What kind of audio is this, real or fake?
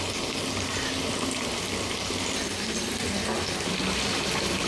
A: fake